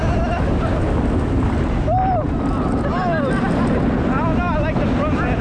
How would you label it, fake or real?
real